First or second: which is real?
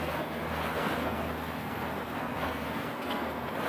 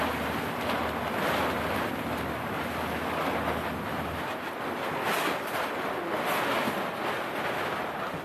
second